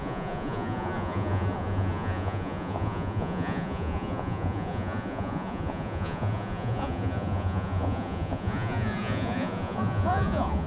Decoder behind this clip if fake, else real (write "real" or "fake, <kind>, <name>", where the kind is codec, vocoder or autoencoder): fake, vocoder, Vocos